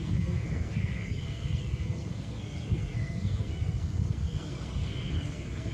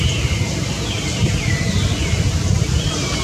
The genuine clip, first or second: second